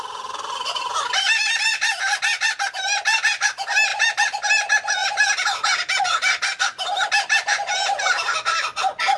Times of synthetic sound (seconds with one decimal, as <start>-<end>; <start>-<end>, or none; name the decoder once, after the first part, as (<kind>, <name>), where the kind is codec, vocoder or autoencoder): 3.9-4.5 (vocoder, BigVGAN v2)